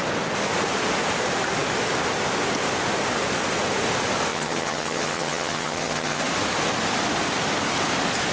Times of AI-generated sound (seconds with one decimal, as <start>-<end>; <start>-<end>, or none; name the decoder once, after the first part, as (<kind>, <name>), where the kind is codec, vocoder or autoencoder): 4.3-6.2 (vocoder, HiFi-GAN)